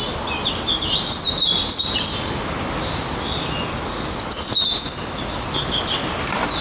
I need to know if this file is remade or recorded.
recorded